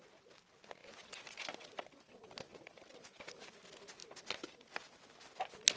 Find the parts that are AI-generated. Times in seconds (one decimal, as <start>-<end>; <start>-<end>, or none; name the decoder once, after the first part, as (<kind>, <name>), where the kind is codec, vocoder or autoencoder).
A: none